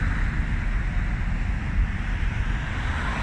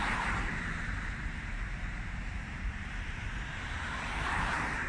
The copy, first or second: second